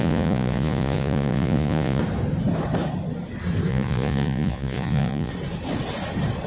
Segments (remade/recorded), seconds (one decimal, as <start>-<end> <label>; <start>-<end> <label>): 0.0-2.0 remade; 2.0-3.7 recorded; 3.7-5.3 remade; 5.3-6.5 recorded